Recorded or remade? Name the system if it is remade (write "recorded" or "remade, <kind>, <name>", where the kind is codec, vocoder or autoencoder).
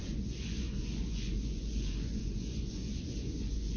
remade, vocoder, Vocos